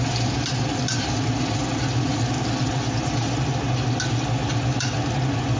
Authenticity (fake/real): real